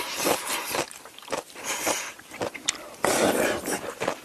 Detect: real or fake fake